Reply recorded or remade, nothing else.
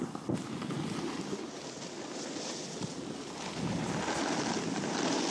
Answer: recorded